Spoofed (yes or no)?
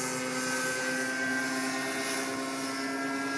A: no